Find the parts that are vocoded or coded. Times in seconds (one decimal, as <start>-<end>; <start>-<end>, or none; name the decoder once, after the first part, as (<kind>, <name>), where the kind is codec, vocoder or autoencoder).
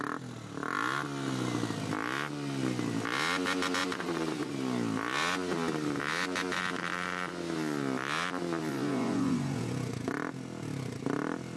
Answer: 3.8-4.5 (vocoder, Vocos); 8.7-10.1